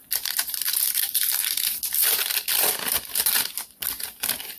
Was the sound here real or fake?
real